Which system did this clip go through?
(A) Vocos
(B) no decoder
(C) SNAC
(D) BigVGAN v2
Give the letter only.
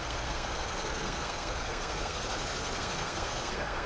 C